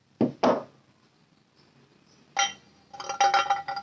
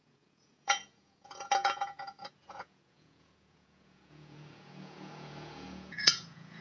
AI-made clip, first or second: second